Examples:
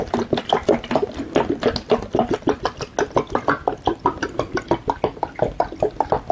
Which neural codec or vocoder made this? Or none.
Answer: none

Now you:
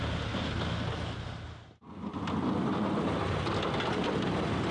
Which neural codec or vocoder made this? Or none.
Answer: none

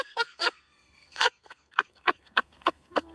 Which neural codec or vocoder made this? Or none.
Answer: codec, SNAC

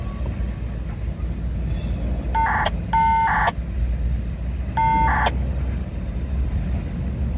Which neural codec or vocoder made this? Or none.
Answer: none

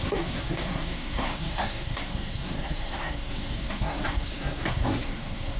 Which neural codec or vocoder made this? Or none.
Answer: codec, SNAC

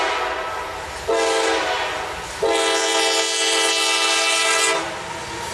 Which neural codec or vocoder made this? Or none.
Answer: none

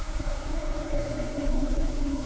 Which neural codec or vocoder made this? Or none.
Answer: codec, SNAC